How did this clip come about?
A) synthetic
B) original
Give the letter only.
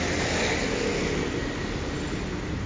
B